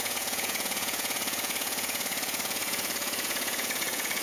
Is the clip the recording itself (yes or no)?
no